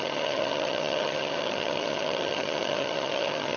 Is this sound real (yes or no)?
no